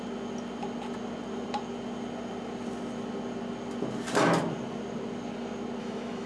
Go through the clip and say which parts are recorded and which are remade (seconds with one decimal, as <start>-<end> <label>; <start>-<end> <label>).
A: 0.0-5.8 recorded; 5.8-6.3 remade